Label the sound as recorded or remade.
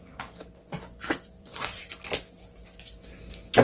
recorded